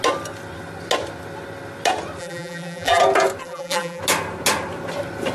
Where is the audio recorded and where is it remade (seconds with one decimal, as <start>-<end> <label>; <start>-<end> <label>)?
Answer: 0.0-2.2 recorded; 2.2-3.0 remade; 3.0-3.4 recorded; 3.4-4.0 remade; 4.0-5.3 recorded